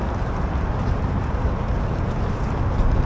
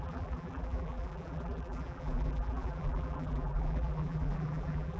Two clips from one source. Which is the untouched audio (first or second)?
first